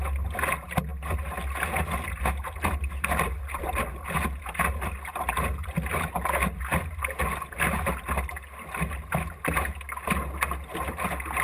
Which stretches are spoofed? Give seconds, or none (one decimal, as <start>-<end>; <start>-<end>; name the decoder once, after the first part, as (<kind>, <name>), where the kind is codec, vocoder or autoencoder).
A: none